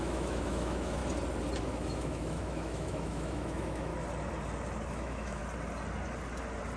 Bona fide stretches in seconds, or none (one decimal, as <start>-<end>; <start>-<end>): 1.0-1.6; 3.9-4.9; 5.4-6.8